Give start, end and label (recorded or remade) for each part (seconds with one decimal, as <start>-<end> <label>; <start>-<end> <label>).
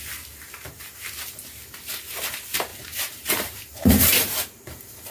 0.0-2.7 recorded; 2.7-5.1 remade